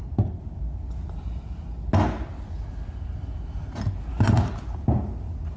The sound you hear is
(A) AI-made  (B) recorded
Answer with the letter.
B